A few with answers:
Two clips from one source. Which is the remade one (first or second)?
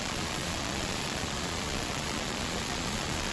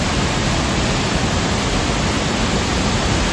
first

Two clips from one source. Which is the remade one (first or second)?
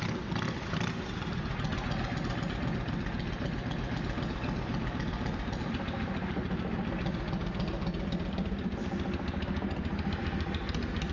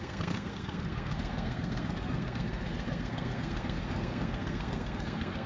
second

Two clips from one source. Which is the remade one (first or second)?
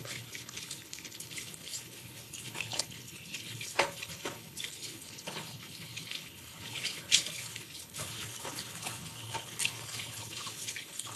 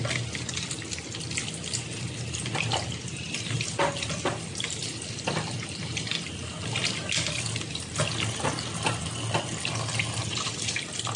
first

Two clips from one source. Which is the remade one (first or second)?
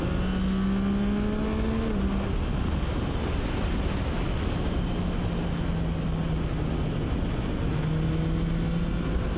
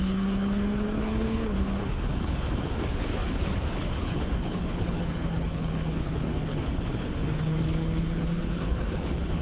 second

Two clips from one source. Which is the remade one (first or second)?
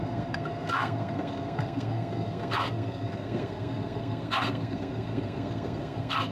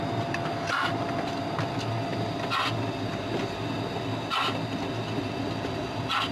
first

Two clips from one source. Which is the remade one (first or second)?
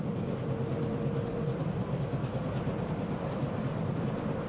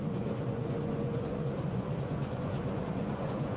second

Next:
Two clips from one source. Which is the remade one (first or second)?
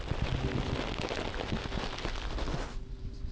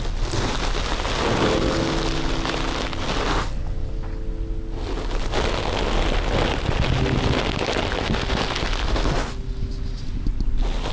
first